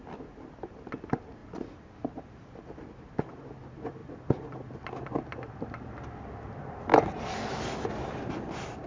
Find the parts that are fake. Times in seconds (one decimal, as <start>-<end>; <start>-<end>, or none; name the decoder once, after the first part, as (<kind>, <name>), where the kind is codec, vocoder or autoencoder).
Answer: 0.0-6.9 (vocoder, BigVGAN v2); 8.3-8.9